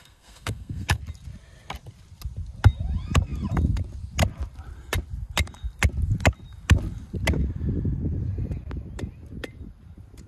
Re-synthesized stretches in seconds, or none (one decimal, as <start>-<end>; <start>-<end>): 0.0-1.0